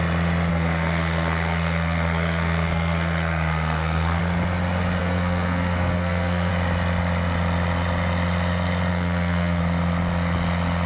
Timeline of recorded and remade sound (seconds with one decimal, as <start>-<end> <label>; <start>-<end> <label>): 0.0-0.5 recorded; 0.5-4.2 remade; 4.2-5.0 recorded; 5.0-6.5 remade; 6.5-8.9 recorded; 8.9-9.6 remade; 9.6-10.9 recorded